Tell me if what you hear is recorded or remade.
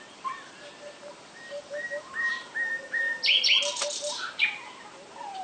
remade